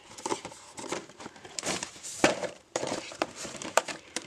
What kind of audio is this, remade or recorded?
remade